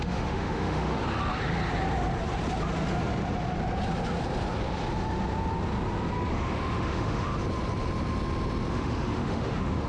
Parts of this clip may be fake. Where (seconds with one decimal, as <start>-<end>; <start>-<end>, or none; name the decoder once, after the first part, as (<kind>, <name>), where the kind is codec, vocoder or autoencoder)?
0.0-1.0 (autoencoder, DAC-VAE); 6.3-7.3; 8.7-9.9